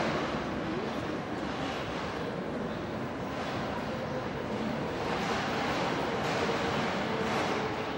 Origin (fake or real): real